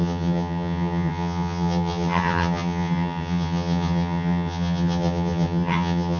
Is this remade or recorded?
remade